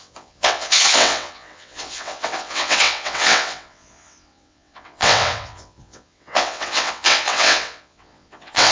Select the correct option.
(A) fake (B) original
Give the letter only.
A